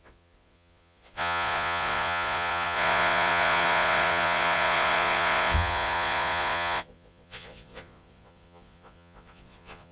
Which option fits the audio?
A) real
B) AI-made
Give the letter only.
B